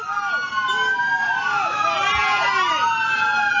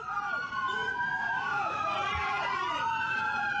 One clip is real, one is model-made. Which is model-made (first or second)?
second